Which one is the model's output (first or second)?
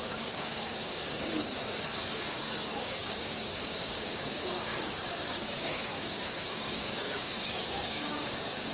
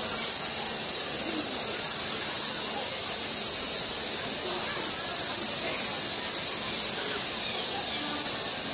first